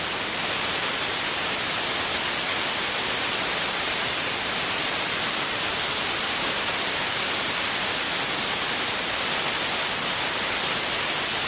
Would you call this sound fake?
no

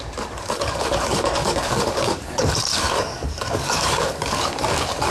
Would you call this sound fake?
yes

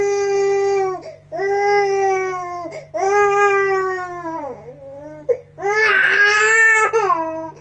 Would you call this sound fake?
no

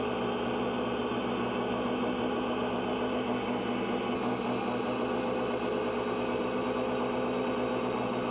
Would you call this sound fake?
no